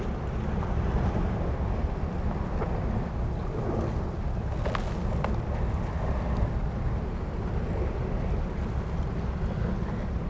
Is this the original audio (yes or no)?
yes